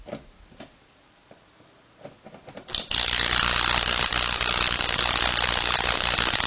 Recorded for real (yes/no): yes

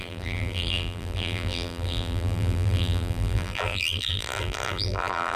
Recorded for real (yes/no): no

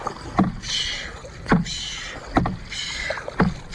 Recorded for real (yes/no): yes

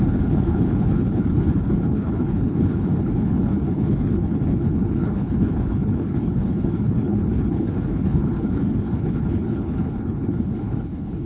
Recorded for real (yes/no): no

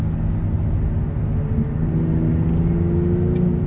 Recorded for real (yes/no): yes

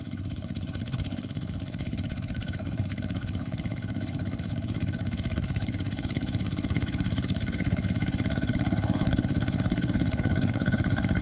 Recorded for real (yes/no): no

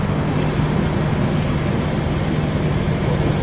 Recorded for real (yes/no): yes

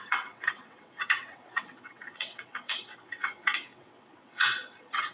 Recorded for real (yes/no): no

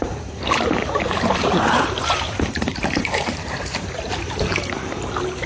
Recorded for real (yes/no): no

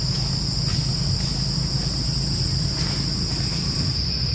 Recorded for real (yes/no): yes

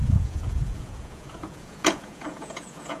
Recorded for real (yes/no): no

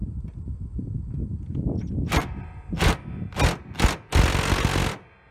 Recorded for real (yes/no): yes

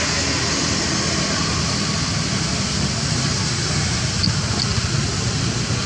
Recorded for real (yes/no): yes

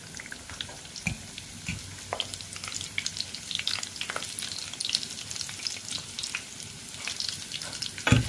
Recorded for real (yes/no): yes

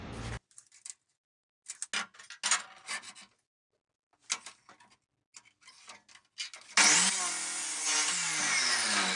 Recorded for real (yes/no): yes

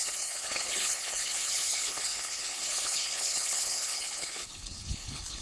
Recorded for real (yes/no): no